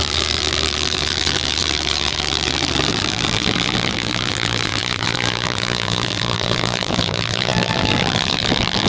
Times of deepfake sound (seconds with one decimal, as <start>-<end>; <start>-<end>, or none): 0.0-8.9